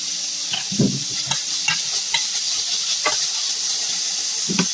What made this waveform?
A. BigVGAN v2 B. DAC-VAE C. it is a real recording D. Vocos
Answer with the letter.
C